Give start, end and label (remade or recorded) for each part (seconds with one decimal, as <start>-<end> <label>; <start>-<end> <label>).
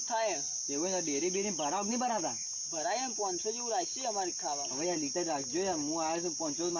0.0-6.8 recorded